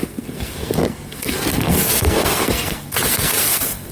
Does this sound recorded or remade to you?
remade